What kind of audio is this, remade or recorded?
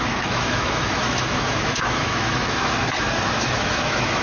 remade